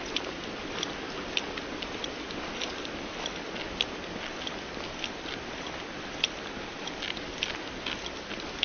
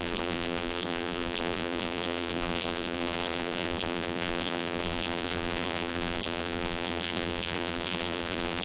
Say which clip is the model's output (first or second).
second